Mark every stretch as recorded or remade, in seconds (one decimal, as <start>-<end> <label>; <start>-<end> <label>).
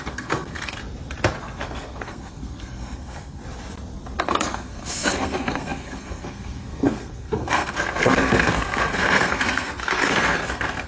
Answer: 0.0-0.8 remade; 0.8-1.4 recorded; 1.4-3.4 remade; 3.4-4.2 recorded; 4.2-10.9 remade